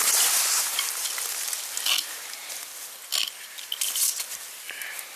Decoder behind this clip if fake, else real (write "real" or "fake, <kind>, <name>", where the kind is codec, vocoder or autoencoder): real